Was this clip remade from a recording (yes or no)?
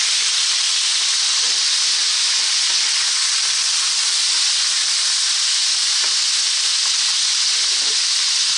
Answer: no